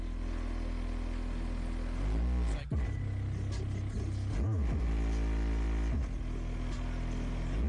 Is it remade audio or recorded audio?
recorded